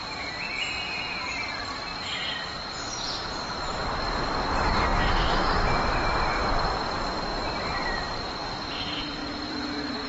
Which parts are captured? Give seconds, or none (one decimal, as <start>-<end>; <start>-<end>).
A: 0.0-7.3; 8.2-9.2